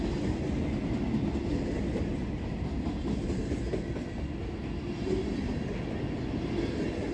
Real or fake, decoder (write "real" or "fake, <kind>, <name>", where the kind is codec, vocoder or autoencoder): real